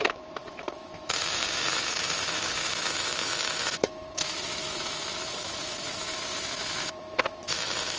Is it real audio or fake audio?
fake